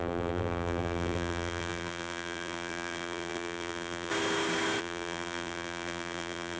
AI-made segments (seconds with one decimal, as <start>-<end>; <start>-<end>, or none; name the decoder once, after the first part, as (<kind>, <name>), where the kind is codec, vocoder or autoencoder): 0.0-4.1 (vocoder, BigVGAN v2); 4.8-6.6